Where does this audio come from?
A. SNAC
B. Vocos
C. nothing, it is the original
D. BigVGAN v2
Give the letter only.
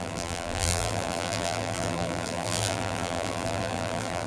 D